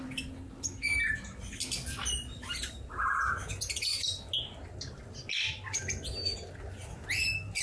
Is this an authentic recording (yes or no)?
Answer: yes